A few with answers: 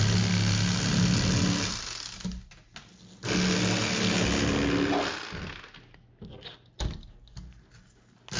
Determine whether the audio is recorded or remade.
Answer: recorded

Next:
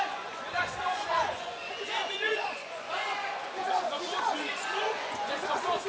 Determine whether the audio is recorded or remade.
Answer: remade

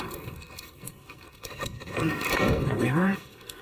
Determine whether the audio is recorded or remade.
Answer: remade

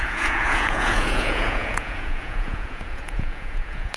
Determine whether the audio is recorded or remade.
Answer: remade